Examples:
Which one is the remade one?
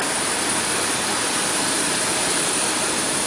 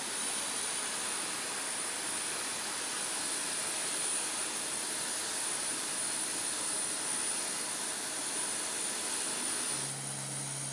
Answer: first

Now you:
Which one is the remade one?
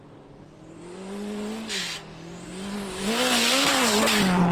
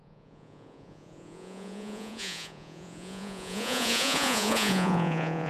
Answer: second